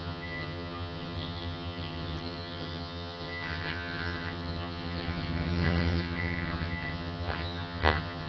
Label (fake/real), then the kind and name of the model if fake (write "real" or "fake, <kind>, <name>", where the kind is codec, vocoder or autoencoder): fake, vocoder, HiFi-GAN